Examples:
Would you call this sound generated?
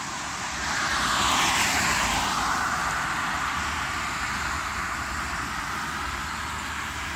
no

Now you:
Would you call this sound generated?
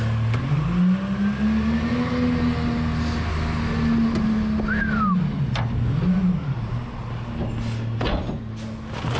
no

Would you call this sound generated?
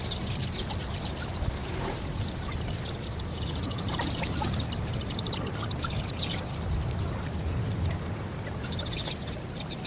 yes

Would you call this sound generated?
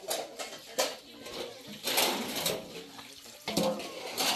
no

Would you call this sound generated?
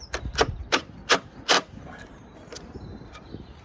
yes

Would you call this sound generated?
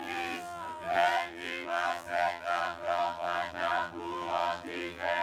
yes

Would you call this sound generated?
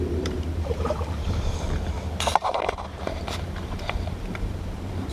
yes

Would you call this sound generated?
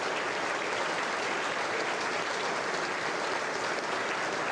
no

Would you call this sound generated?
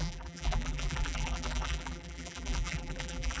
yes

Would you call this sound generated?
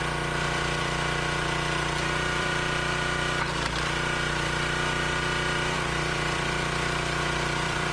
yes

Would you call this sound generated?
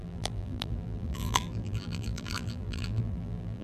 yes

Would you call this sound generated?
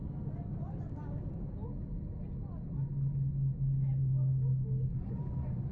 no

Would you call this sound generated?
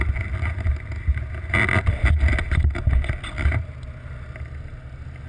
no